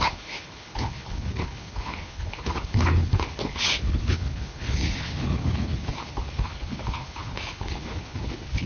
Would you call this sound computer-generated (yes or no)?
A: yes